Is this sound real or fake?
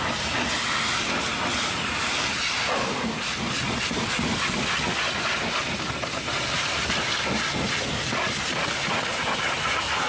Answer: real